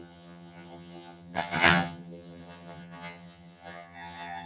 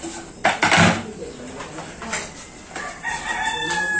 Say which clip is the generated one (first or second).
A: first